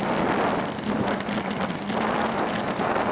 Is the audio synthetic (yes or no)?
no